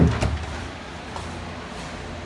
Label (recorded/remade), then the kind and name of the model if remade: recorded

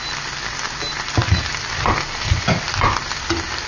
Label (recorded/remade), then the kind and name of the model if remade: recorded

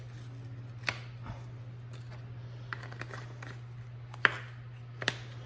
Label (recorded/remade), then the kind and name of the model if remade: recorded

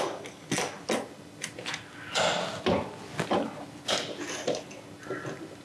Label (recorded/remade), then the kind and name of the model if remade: recorded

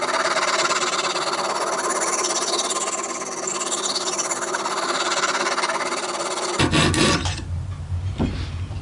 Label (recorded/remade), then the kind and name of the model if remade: recorded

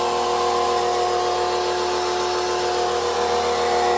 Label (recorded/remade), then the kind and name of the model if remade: recorded